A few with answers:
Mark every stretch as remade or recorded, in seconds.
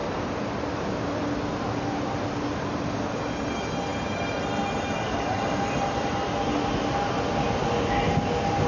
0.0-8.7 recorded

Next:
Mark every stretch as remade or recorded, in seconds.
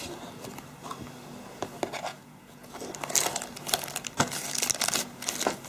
0.0-2.1 recorded; 2.1-2.7 remade; 2.7-5.7 recorded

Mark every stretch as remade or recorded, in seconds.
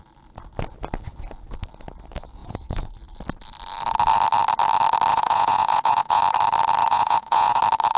0.0-2.4 recorded; 2.4-2.9 remade; 2.9-5.1 recorded; 5.1-6.2 remade; 6.2-6.8 recorded; 6.8-7.6 remade; 7.6-8.0 recorded